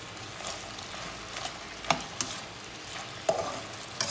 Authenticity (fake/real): real